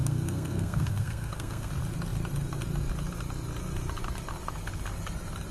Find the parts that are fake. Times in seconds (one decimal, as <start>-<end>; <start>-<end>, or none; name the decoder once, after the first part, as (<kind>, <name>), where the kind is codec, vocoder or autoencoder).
0.0-1.7 (codec, SNAC)